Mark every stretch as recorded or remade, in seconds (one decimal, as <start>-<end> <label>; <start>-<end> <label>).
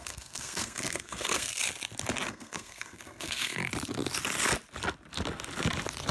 0.0-1.6 remade; 1.6-2.3 recorded; 2.3-3.6 remade; 3.6-6.1 recorded